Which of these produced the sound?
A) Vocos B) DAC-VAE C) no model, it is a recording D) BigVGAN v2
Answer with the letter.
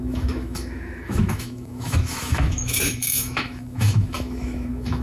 B